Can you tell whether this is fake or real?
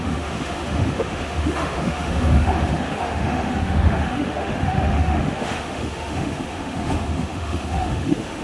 fake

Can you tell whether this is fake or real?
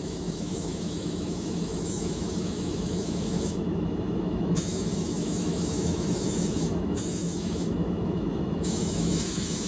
fake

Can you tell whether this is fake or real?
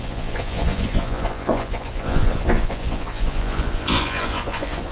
fake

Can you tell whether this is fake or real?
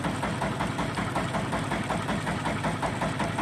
real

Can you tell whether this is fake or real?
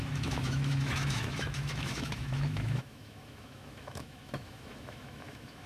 fake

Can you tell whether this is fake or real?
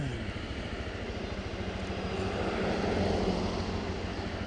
real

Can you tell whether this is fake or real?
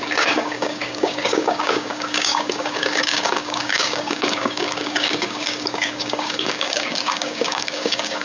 fake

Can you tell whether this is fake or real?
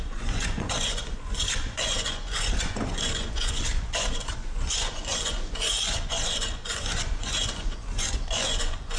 fake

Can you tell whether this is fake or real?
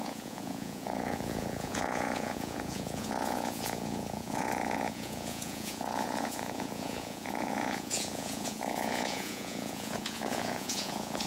fake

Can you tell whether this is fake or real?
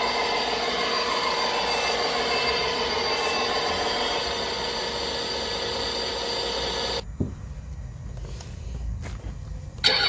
real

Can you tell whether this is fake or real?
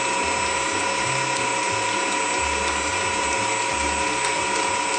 real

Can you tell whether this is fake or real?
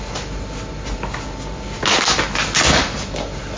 real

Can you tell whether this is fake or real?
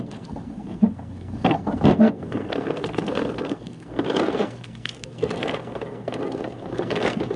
fake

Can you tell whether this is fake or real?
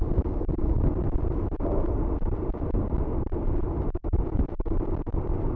fake